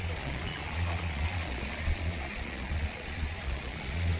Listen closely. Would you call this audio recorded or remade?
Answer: remade